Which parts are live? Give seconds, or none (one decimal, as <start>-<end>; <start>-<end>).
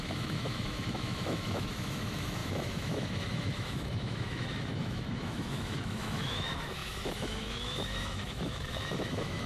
none